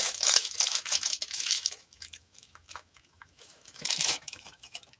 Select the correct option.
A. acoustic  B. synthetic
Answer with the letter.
B